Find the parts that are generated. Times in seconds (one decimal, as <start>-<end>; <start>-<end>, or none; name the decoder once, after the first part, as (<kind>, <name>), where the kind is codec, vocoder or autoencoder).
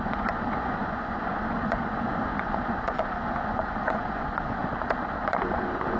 0.0-4.6 (vocoder, Vocos); 5.2-6.0